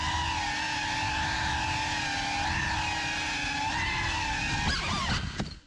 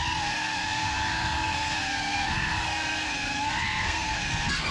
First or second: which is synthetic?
second